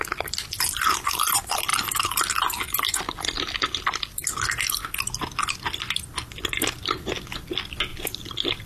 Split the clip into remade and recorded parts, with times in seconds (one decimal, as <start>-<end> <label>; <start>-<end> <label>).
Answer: 0.0-1.7 recorded; 1.7-2.3 remade; 2.3-7.9 recorded; 7.9-8.7 remade